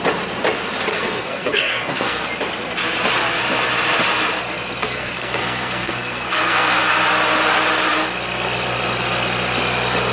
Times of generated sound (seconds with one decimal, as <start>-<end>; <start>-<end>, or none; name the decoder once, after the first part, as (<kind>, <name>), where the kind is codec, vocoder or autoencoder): 0.9-2.2 (codec, SNAC); 4.8-6.8